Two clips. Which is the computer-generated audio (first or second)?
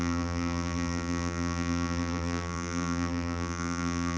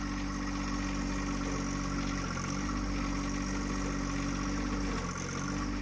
first